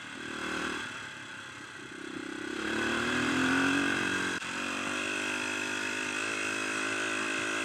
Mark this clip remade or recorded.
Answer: remade